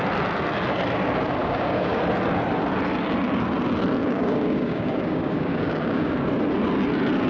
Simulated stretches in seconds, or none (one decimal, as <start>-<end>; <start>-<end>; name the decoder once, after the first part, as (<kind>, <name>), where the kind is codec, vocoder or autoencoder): 1.4-2.0 (codec, DAC); 4.0-6.1